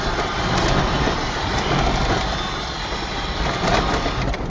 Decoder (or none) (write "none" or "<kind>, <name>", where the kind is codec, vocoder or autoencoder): none